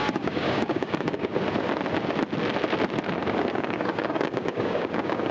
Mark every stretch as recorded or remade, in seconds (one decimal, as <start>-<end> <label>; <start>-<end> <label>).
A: 0.0-1.3 remade; 1.3-3.5 recorded; 3.5-5.3 remade